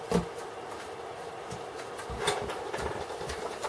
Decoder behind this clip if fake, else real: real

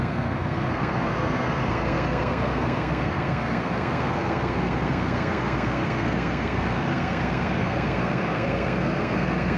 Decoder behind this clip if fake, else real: fake, codec, SNAC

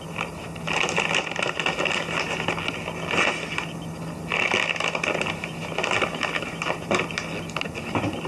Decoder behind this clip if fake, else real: real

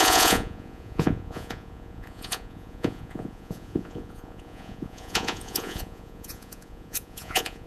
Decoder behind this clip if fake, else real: fake, vocoder, Vocos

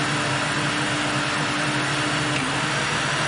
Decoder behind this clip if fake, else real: real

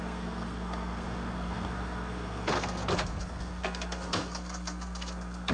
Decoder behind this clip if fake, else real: fake, codec, SNAC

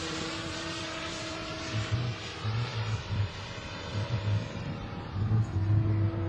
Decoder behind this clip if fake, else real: fake, vocoder, BigVGAN v2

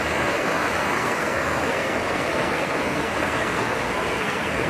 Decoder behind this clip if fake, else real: fake, codec, SNAC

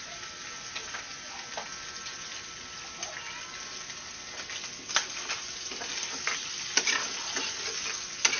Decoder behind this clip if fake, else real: real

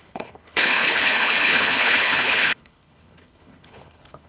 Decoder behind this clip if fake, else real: fake, codec, HILCodec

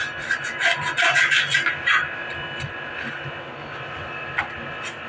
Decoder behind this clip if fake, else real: real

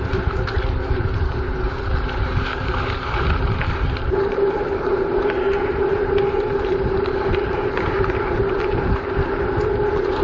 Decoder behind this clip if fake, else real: fake, vocoder, BigVGAN v2